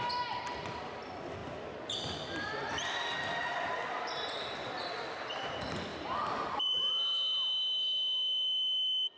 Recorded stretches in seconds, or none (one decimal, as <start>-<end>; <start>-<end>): 0.0-5.9; 6.9-9.2